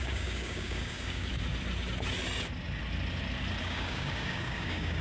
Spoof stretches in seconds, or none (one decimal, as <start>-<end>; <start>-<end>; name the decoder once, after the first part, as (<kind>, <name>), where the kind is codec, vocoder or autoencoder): 0.0-1.3 (codec, DAC); 3.6-5.0